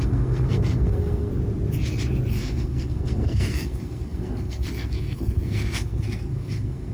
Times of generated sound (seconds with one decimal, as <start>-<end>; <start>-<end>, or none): 0.0-1.3; 2.3-6.9